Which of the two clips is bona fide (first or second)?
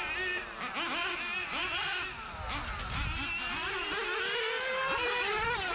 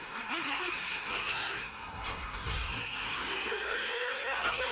first